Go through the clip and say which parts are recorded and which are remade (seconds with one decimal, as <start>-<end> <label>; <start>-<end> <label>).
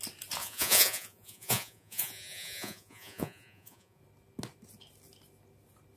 0.0-0.4 recorded; 0.4-4.0 remade; 4.0-6.0 recorded